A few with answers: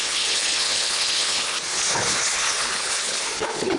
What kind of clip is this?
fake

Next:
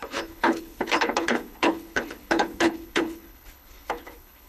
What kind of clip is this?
fake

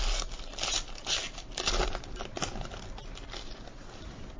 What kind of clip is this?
real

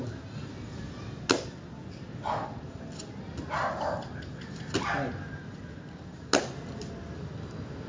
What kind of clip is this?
real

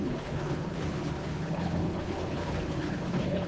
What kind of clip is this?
fake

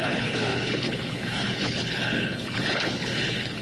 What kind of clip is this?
fake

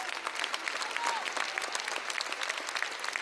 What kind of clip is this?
real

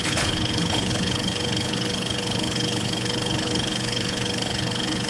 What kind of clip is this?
fake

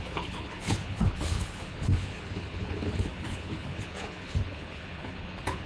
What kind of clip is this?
fake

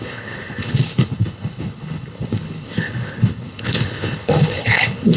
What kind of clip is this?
fake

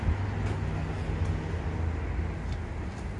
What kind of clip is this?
real